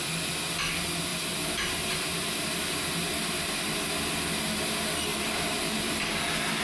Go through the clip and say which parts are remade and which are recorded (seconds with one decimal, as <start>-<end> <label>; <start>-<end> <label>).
0.0-5.1 recorded; 5.1-6.6 remade